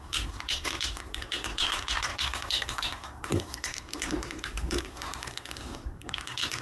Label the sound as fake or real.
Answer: fake